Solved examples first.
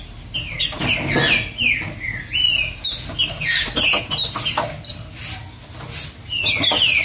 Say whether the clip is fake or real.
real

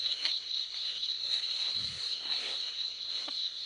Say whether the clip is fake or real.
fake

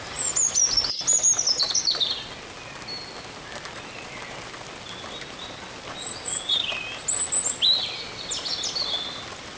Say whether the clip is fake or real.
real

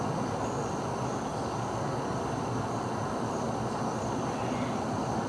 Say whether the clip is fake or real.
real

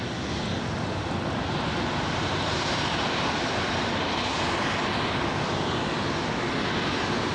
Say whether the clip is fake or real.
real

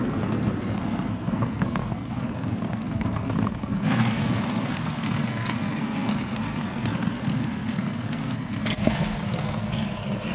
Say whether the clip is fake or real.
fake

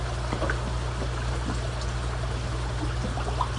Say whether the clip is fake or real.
real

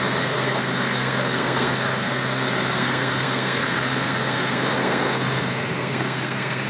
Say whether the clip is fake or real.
fake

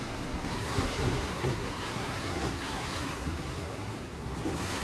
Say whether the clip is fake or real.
fake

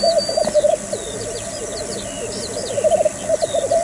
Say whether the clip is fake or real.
real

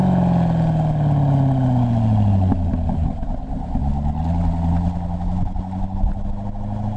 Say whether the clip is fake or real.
real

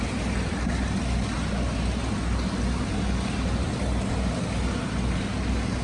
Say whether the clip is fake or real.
real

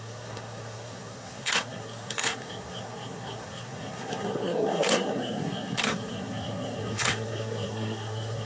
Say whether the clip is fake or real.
fake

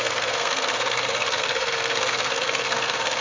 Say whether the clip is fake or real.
fake